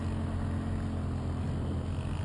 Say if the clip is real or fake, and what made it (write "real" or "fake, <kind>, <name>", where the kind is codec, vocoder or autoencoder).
real